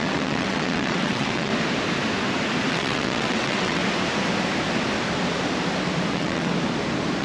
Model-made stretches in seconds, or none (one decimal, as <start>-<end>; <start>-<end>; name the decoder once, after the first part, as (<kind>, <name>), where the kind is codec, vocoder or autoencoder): 0.0-1.5 (vocoder, WaveNeXt); 2.7-3.8; 6.1-6.5